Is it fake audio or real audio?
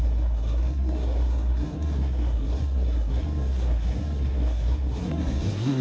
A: fake